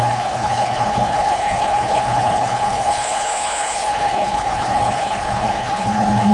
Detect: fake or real fake